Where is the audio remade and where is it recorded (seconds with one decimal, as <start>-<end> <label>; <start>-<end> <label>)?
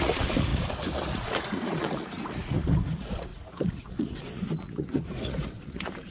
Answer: 0.0-6.1 remade